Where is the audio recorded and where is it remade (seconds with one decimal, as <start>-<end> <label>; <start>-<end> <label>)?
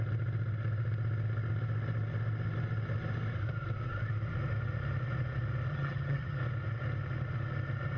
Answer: 0.0-5.7 recorded; 5.7-6.4 remade; 6.4-8.0 recorded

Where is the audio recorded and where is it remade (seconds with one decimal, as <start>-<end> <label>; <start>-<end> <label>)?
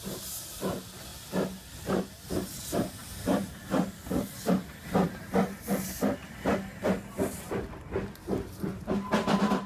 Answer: 0.0-1.1 recorded; 1.1-2.3 remade; 2.3-3.0 recorded; 3.0-8.0 remade; 8.0-9.7 recorded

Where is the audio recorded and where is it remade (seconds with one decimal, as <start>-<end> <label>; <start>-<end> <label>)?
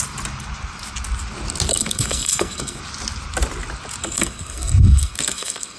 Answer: 0.0-1.7 recorded; 1.7-2.8 remade; 2.8-4.0 recorded; 4.0-5.8 remade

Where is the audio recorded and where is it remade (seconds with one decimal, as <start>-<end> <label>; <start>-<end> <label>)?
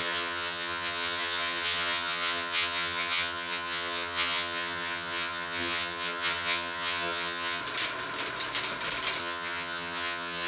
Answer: 0.0-7.6 remade; 7.6-9.2 recorded; 9.2-10.5 remade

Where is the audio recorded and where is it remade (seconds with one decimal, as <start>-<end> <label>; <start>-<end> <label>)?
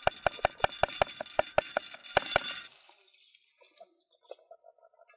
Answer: 0.0-5.2 recorded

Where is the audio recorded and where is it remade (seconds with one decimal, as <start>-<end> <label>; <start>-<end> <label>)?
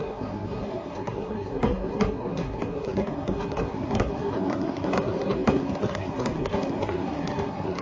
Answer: 0.0-7.8 remade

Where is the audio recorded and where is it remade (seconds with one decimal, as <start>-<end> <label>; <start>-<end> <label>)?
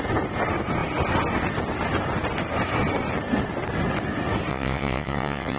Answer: 0.0-4.5 recorded; 4.5-5.6 remade